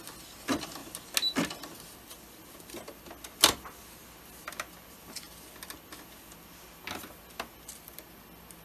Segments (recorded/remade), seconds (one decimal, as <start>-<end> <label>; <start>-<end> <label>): 0.0-8.6 recorded